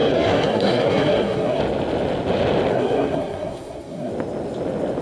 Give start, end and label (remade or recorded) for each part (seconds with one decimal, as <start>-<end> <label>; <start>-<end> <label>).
0.0-1.6 remade; 1.6-2.7 recorded; 2.7-4.1 remade; 4.1-5.0 recorded